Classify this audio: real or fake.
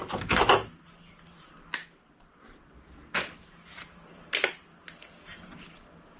real